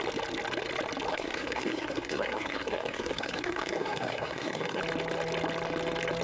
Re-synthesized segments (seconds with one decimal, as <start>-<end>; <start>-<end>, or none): 1.1-4.8